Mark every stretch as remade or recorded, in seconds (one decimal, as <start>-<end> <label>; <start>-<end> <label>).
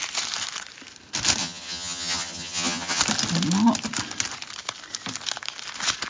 0.0-1.4 recorded; 1.4-3.0 remade; 3.0-6.1 recorded